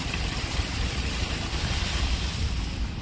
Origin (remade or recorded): recorded